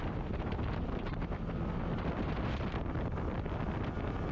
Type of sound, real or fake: real